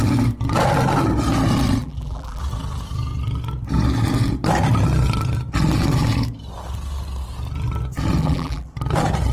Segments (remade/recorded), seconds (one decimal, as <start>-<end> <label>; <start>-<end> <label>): 0.0-1.8 recorded; 1.8-2.4 remade; 2.4-8.2 recorded; 8.2-8.7 remade; 8.7-9.3 recorded